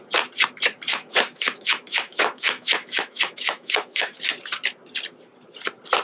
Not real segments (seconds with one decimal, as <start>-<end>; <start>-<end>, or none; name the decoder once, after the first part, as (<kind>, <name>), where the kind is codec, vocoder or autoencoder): 0.9-4.2 (autoencoder, DAC-VAE)